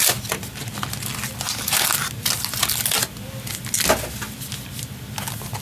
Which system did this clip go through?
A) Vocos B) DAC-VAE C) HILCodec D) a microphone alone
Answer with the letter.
D